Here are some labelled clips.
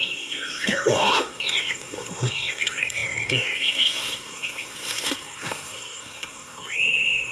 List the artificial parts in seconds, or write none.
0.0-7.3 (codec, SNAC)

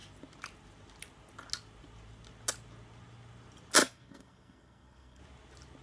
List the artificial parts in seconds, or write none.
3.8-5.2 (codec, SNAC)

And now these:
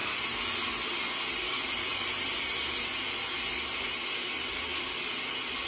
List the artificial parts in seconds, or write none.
none

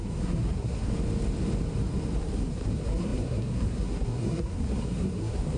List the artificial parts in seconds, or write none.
0.0-0.9 (codec, SNAC); 2.2-5.6

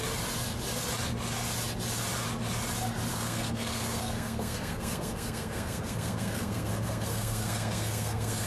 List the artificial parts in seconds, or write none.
3.1-8.5 (codec, SNAC)

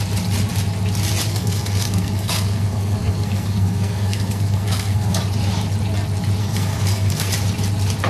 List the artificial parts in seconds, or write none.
1.3-5.2 (codec, SNAC); 6.4-7.3

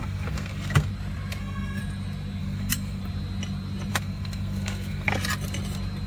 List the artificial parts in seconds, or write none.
0.0-0.9 (codec, SNAC); 1.4-1.8; 2.4-3.0; 3.9-5.1

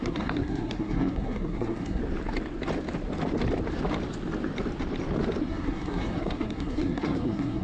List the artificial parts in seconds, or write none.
0.0-2.0 (codec, SNAC); 5.4-7.6